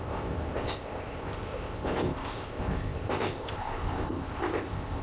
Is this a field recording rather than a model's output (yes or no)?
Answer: no